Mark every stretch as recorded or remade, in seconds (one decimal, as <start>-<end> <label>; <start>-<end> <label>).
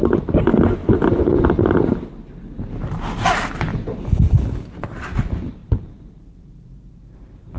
0.0-5.6 recorded; 5.6-7.6 remade